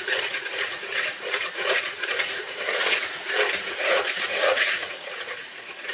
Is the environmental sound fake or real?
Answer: fake